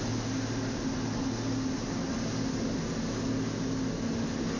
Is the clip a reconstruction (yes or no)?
no